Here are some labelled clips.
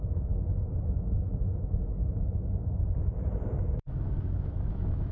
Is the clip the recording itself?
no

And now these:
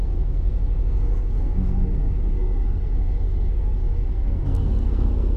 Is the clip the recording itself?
no